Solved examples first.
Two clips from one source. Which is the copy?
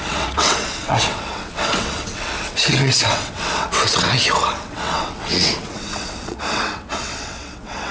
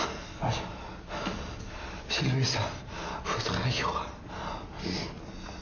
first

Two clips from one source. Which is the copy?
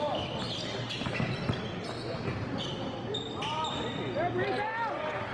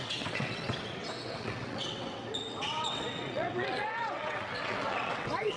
second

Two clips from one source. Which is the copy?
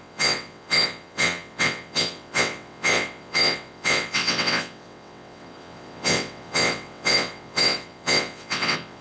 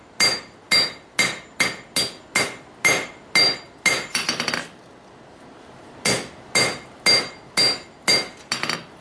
first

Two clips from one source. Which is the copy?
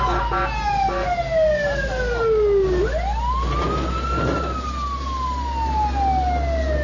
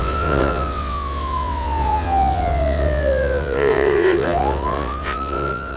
second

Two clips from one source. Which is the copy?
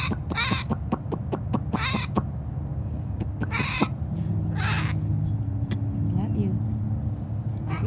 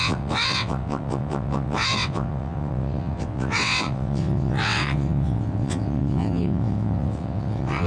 second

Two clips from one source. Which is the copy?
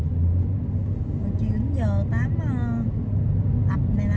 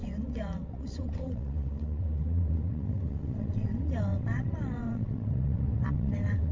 second